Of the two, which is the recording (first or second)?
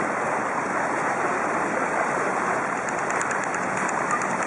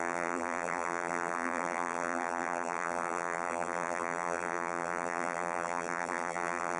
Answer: first